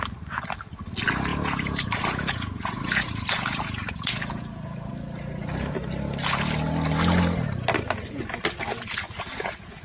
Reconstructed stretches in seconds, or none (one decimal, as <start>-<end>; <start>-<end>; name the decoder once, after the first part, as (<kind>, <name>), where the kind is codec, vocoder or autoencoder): 1.3-4.9 (vocoder, Vocos); 8.7-9.8